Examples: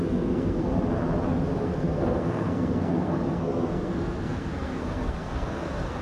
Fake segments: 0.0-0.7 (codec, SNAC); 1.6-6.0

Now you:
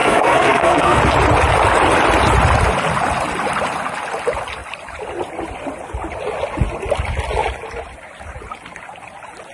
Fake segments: 0.0-1.0 (codec, SNAC)

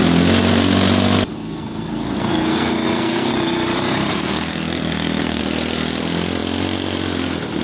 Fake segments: 1.3-3.3 (codec, SNAC); 4.1-5.4

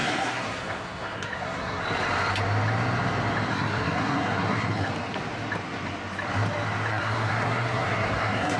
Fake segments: 0.0-1.8 (codec, SNAC); 3.5-4.9; 6.9-8.6

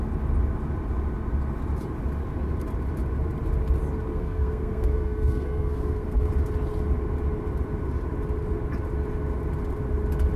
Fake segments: 4.1-6.3 (codec, SNAC)

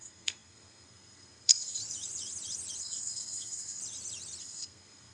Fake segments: 0.0-1.8 (codec, SNAC); 2.8-3.8; 4.4-5.1

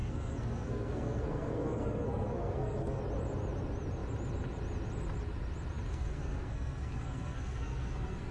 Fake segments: 0.0-3.0 (codec, SNAC); 5.9-8.3

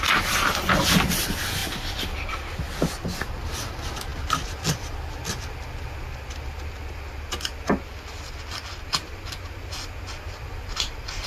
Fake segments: none